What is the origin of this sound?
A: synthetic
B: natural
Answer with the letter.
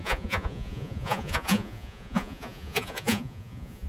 A